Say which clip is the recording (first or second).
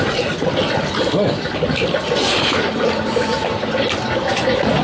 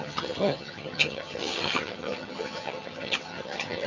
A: first